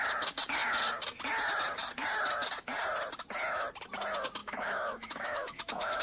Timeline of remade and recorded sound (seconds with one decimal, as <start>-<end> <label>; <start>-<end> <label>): 0.0-4.4 recorded; 4.4-6.0 remade